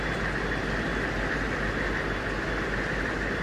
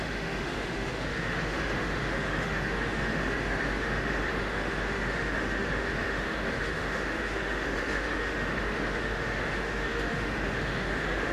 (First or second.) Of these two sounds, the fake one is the second